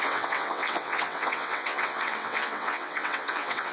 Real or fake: fake